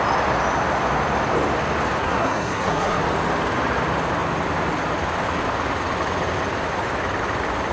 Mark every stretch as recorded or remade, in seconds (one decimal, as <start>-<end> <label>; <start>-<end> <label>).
0.0-2.0 recorded; 2.0-3.0 remade; 3.0-7.7 recorded